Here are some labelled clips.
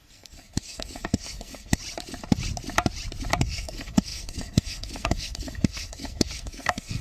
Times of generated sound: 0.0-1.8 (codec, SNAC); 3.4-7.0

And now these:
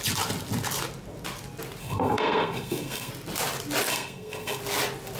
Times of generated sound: 1.8-3.1 (codec, SNAC); 3.9-4.6

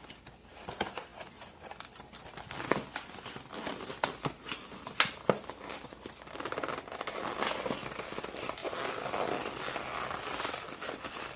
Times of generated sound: none

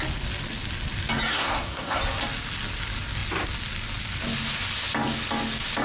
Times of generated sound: 1.3-2.0 (codec, SNAC)

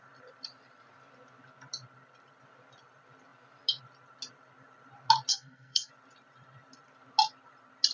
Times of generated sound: 5.3-5.9 (codec, SNAC)

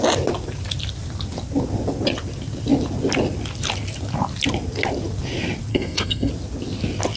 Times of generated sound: 5.7-6.3 (codec, SNAC)